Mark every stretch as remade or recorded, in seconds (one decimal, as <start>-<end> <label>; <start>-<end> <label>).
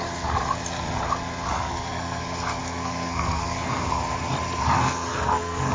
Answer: 0.0-1.5 recorded; 1.5-2.2 remade; 2.2-2.6 recorded; 2.6-3.9 remade; 3.9-4.8 recorded; 4.8-5.7 remade